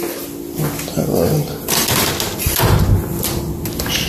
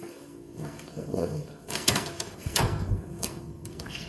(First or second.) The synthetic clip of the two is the second